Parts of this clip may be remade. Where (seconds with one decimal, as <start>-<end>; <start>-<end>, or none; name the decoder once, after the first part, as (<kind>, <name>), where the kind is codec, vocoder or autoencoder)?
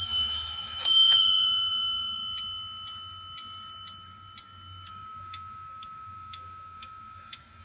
0.0-2.2 (autoencoder, DAC-VAE); 4.9-7.6